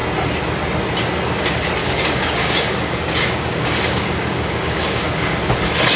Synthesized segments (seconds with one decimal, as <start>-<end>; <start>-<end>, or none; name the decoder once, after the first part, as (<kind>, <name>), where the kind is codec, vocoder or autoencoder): 1.8-5.4 (codec, DAC)